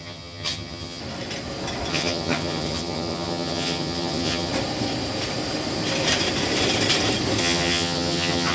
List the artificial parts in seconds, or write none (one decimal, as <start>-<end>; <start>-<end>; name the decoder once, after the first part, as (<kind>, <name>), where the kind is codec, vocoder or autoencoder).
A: 0.0-1.0 (vocoder, HiFi-GAN); 1.9-4.5; 7.4-8.5